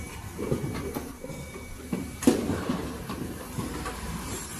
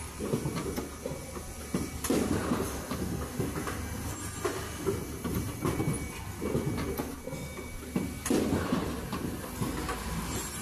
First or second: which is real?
second